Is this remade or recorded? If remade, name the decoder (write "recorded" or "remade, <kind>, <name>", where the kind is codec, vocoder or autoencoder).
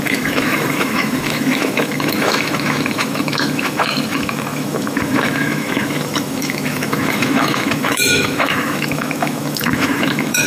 remade, autoencoder, DAC-VAE